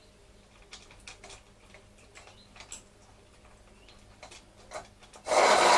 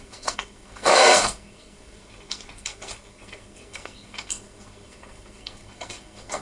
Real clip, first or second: first